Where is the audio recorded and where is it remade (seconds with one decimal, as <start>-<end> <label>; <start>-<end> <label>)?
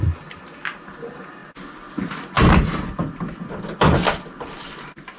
0.0-5.2 recorded